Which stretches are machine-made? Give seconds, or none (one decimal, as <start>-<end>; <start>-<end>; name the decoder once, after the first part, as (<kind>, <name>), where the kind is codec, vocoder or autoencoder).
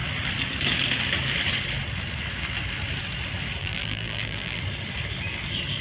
3.6-4.6 (vocoder, BigVGAN v2)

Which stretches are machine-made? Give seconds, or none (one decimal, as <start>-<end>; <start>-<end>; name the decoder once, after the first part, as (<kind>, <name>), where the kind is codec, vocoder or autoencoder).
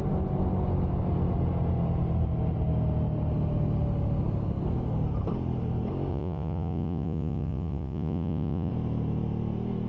6.1-8.7 (vocoder, Vocos)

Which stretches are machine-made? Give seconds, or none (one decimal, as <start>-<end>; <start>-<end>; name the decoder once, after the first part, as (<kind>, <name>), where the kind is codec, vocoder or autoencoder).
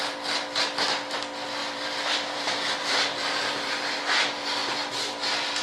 1.6-3.9 (vocoder, BigVGAN v2)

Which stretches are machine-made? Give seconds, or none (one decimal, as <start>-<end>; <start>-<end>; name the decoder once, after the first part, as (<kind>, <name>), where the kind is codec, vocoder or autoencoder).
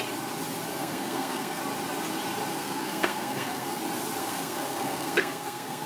0.7-1.6 (codec, SNAC); 2.5-3.8; 4.2-5.9